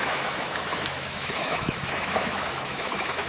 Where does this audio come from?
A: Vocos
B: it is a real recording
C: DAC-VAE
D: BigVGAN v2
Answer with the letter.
C